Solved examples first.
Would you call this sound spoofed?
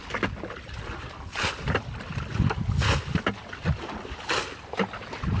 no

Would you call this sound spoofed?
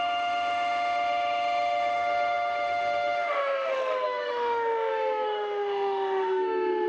yes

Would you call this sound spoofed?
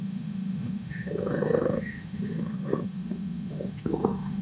yes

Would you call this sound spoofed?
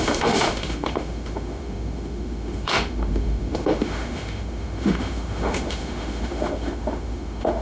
yes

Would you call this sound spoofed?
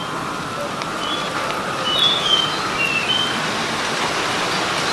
no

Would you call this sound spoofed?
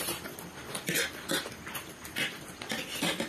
no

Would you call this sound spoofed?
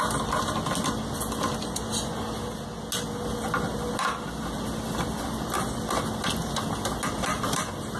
no